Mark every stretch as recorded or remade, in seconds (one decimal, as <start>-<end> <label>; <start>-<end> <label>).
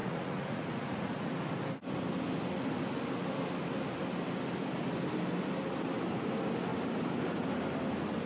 0.0-1.3 remade; 1.3-8.3 recorded